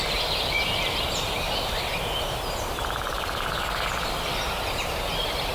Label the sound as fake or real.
real